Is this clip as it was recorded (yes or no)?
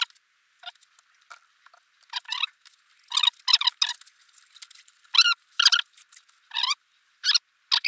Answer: yes